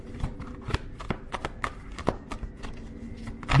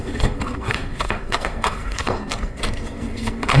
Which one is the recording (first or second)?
first